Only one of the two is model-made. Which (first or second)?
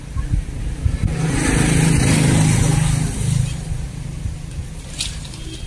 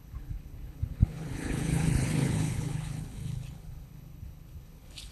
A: second